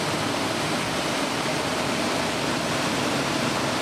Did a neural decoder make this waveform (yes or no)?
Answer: no